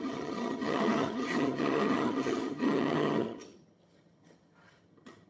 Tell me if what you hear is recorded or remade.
remade